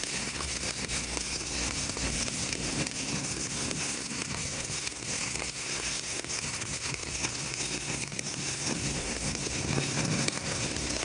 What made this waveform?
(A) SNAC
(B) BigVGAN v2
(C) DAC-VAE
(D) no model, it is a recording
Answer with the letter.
A